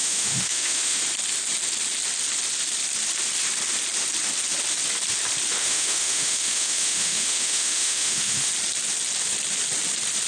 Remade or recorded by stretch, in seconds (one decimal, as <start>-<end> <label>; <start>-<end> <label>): 0.0-1.0 remade; 1.0-5.6 recorded; 5.6-8.5 remade; 8.5-10.3 recorded